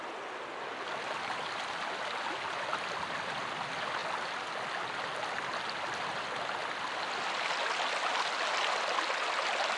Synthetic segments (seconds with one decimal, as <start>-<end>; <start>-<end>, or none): none